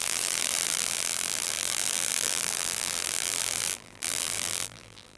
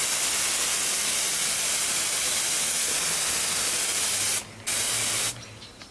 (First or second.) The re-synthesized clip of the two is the first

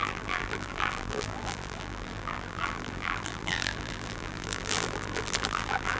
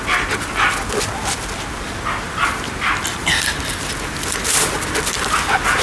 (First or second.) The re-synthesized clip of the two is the first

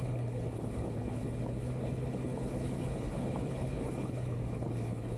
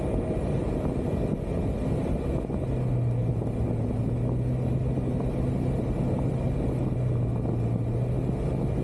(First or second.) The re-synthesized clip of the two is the first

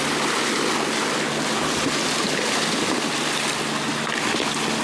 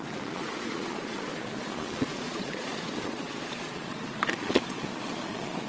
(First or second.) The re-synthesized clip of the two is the second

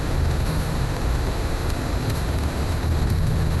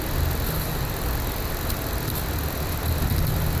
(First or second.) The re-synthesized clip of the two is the first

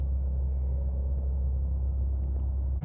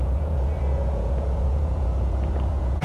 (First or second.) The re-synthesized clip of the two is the second